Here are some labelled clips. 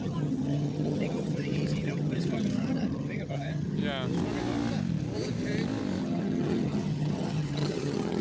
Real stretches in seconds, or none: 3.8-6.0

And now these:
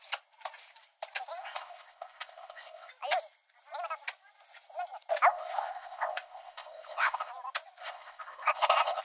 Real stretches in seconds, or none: 0.0-1.4; 2.9-5.3; 7.3-7.8

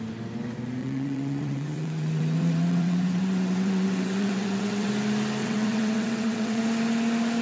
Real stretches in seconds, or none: 0.0-0.8; 4.9-5.4; 6.6-7.4

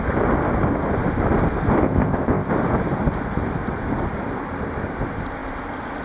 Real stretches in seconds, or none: 0.0-1.8; 2.5-6.0

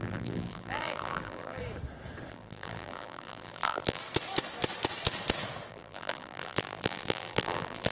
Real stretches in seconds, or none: 1.6-2.3; 4.0-5.7

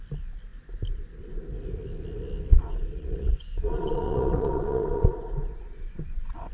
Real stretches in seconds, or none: 0.0-2.5